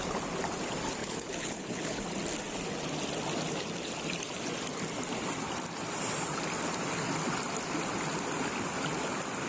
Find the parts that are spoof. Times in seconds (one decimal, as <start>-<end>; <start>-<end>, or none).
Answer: 1.0-2.0